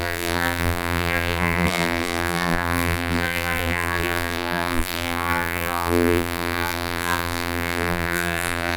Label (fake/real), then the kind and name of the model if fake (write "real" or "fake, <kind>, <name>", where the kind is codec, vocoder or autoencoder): fake, vocoder, BigVGAN v2